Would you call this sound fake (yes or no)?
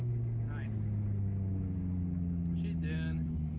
no